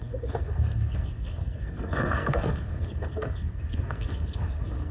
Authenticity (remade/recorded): remade